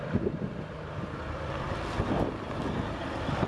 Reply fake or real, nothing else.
real